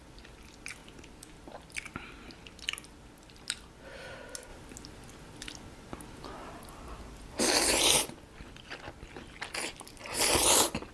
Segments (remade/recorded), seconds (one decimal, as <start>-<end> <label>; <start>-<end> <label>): 0.0-10.9 recorded